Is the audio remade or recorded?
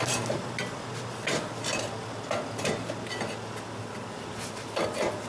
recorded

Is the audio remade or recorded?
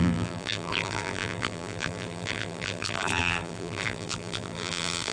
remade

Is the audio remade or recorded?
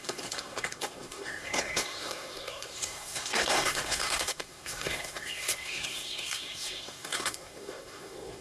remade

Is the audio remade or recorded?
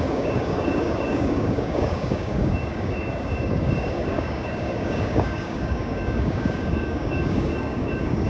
remade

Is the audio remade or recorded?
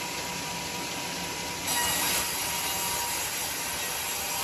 recorded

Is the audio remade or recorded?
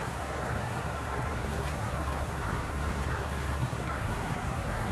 remade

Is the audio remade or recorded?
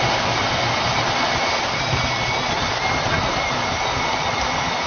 recorded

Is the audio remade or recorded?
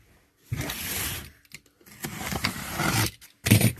recorded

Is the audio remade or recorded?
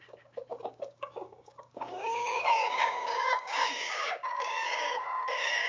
remade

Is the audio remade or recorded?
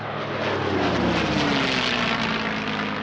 recorded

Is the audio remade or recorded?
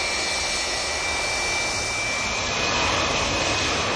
recorded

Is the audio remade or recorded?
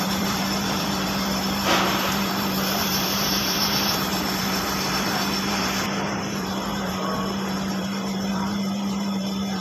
remade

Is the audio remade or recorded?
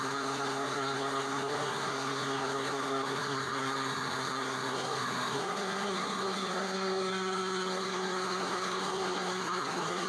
remade